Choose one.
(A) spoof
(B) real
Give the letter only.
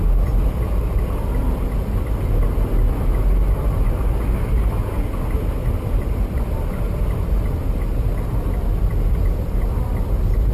B